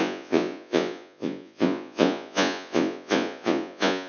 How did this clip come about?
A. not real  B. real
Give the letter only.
A